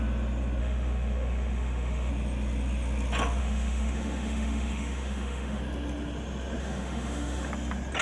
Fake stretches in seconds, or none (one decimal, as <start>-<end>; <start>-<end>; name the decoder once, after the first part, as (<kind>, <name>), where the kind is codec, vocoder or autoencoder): 0.6-2.1 (autoencoder, DAC-VAE); 3.4-5.6; 6.6-7.5